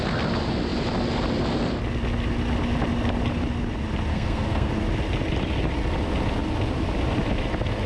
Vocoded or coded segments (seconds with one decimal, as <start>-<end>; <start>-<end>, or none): 4.1-4.7